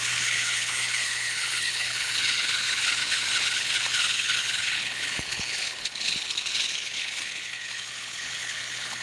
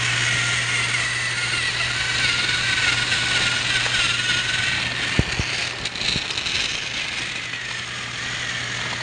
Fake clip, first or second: first